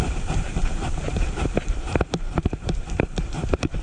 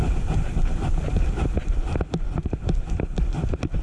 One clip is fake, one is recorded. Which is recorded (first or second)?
second